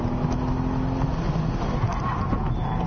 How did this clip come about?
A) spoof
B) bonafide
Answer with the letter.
B